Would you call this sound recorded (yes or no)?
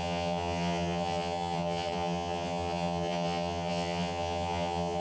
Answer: no